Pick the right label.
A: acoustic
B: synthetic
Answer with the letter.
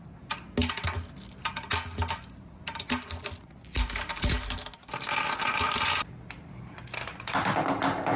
A